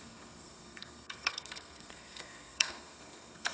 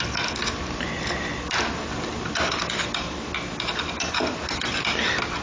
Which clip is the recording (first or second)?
second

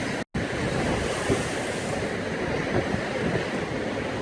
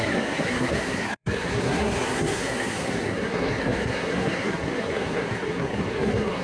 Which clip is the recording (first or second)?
first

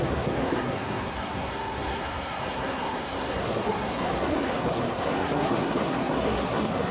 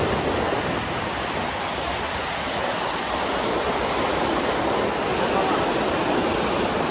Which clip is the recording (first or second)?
second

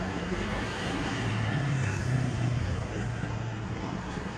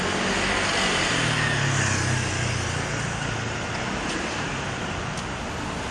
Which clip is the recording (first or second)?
second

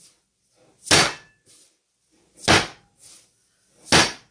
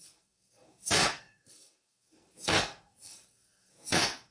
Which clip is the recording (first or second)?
first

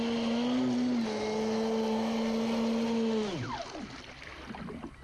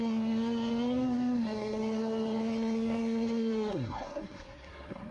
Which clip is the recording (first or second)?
first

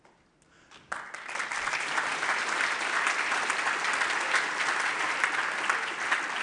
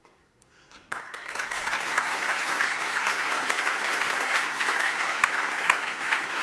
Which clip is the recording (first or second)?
first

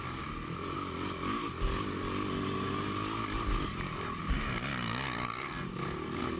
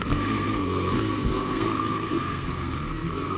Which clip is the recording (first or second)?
first